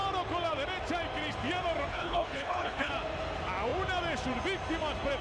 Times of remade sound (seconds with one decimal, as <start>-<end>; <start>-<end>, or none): 1.9-2.9